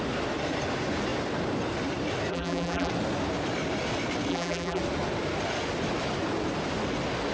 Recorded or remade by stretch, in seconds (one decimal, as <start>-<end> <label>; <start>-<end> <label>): 0.0-2.3 recorded; 2.3-2.9 remade; 2.9-4.3 recorded; 4.3-4.8 remade; 4.8-7.3 recorded